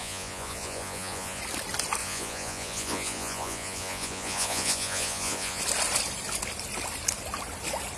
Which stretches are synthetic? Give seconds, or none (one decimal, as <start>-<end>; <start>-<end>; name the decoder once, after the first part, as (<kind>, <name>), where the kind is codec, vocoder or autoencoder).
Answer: 0.0-1.4 (vocoder, Vocos); 2.0-5.6

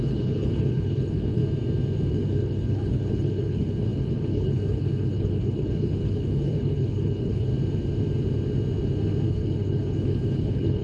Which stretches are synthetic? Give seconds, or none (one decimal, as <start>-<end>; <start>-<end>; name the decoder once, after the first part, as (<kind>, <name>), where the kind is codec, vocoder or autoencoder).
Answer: 0.0-1.4 (codec, HILCodec); 2.1-7.5; 9.3-10.8

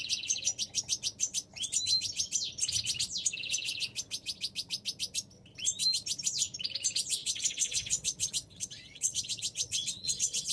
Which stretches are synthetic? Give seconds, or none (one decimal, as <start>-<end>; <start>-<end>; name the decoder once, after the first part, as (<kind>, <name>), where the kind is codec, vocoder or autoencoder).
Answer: 7.2-10.5 (vocoder, WaveNeXt)

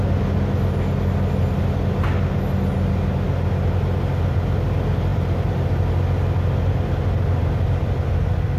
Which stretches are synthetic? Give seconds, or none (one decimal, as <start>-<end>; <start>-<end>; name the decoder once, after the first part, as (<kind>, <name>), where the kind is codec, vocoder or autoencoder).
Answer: none

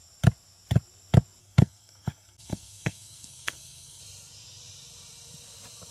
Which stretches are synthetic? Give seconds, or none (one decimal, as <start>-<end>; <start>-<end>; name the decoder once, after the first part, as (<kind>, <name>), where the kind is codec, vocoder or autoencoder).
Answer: 1.4-4.0 (codec, SNAC)